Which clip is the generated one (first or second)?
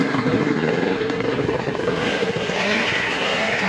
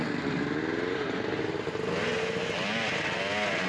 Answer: first